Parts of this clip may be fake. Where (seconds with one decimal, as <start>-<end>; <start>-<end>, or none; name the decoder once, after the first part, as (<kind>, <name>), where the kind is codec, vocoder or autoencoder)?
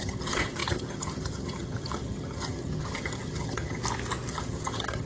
0.0-3.8 (vocoder, HiFi-GAN); 4.3-5.1